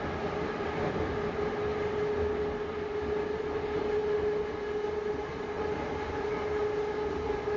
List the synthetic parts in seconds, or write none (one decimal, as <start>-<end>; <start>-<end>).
none